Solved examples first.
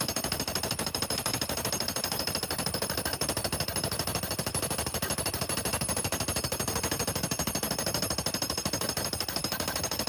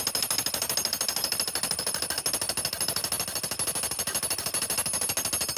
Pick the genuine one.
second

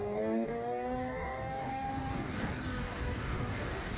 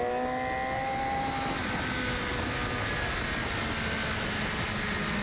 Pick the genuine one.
second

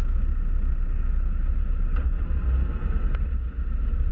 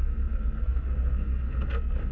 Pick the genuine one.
first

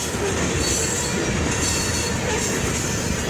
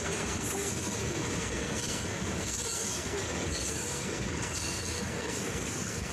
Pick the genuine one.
first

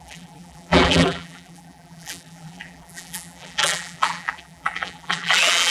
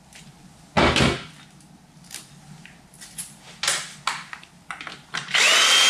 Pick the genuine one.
second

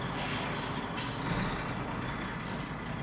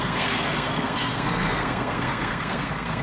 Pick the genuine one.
first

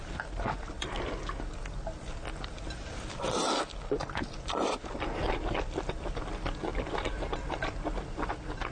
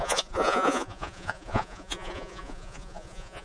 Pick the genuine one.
first